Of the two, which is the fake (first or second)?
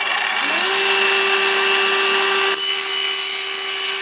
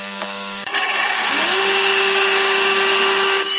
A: second